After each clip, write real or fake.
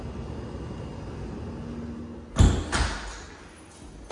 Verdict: real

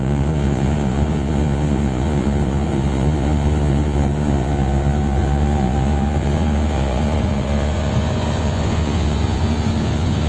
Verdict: fake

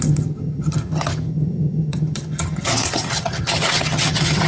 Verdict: fake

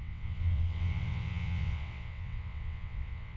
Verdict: fake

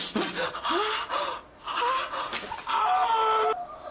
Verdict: real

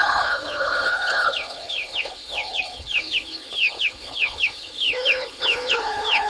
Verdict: fake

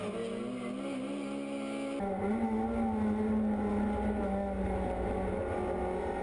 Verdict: real